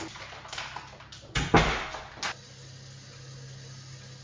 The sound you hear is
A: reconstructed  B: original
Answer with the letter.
B